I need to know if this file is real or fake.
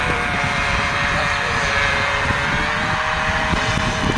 fake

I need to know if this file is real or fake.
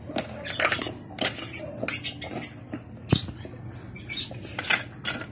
real